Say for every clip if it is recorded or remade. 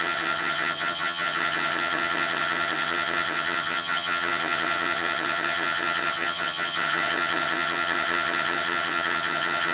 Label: remade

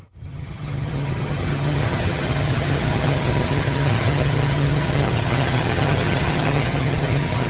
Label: remade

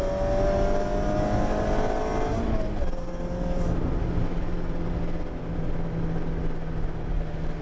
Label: recorded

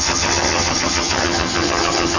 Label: remade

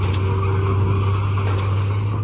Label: recorded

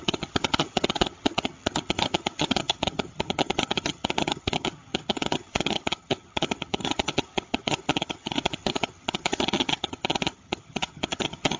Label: remade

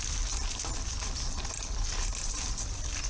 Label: recorded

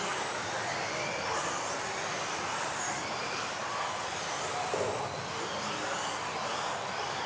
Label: recorded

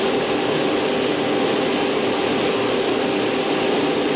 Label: recorded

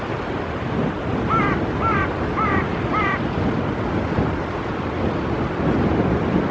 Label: recorded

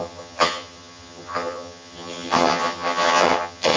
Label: remade